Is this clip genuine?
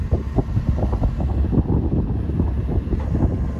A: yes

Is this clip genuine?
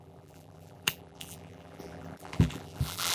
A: no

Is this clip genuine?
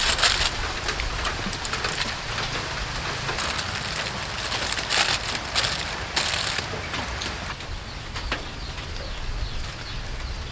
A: yes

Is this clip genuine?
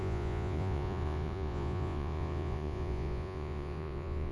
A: no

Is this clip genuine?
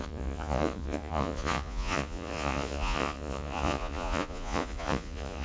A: no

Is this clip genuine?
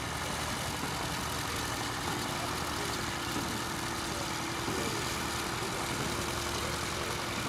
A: yes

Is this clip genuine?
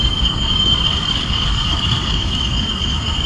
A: no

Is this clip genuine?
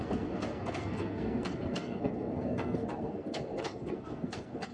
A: no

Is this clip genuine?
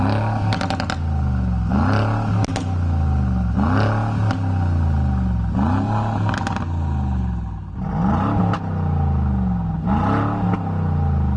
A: yes